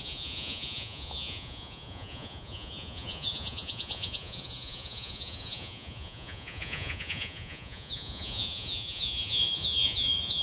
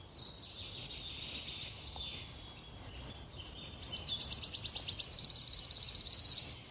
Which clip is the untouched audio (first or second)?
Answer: second